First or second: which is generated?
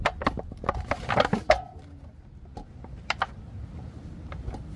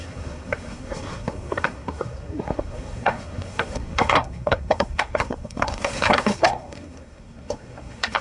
second